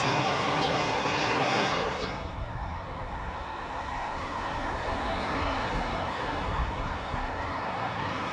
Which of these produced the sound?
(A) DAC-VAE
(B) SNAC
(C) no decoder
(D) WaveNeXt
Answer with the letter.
B